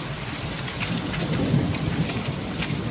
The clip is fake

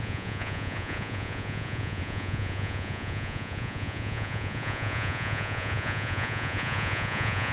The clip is fake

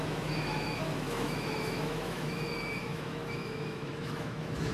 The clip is fake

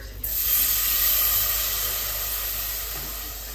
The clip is real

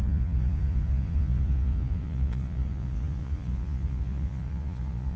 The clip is fake